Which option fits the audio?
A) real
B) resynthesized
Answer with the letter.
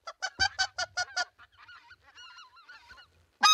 A